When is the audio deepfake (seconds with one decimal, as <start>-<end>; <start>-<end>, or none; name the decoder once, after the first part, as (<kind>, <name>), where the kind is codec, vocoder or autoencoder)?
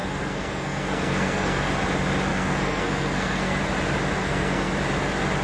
0.0-1.7 (codec, SNAC); 2.3-3.6; 4.2-4.7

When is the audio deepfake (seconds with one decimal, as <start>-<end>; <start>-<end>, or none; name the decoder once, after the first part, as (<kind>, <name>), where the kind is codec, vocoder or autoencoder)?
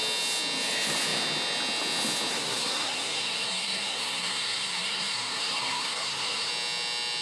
2.3-6.5 (codec, SNAC)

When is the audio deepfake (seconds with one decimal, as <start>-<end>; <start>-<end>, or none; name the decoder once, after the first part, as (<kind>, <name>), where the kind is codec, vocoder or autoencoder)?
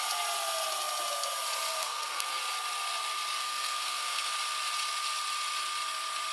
1.7-2.4 (codec, SNAC); 3.4-4.3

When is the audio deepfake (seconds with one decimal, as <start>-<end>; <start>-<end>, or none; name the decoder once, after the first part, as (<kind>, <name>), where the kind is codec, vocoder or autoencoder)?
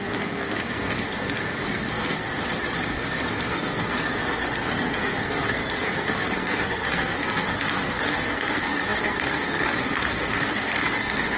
0.0-2.3 (codec, SNAC); 2.9-11.4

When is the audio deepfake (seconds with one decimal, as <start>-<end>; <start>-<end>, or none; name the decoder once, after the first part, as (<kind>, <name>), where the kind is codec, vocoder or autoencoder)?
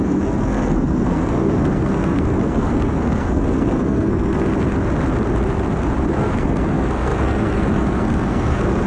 0.0-4.5 (codec, SNAC); 6.1-8.9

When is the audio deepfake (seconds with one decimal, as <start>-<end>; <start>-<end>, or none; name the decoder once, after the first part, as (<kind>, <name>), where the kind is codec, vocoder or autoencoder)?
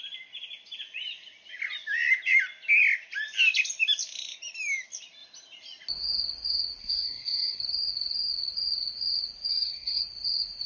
6.8-7.6 (codec, SNAC); 9.5-10.0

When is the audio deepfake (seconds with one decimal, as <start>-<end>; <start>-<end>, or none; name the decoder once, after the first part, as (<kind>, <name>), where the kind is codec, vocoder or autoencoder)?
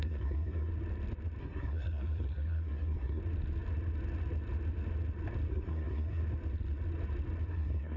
0.0-0.7 (codec, SNAC); 1.4-3.2; 5.5-6.2; 7.5-8.0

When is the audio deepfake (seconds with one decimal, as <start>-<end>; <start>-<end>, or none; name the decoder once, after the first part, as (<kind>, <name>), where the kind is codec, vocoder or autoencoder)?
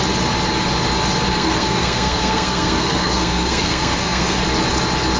1.3-4.4 (codec, SNAC)